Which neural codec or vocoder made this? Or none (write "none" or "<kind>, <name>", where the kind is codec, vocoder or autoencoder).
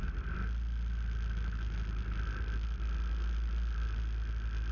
none